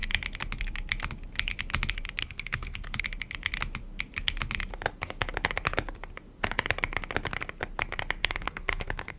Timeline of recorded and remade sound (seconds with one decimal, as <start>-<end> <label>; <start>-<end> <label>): 0.0-2.2 recorded; 2.2-3.0 remade; 3.0-8.2 recorded; 8.2-9.2 remade